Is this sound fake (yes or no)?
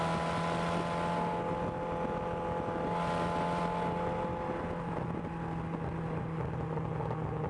no